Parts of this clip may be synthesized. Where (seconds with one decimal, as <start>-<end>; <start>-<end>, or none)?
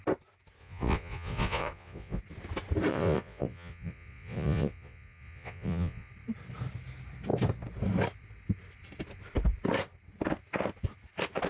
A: 0.6-2.2; 2.9-6.1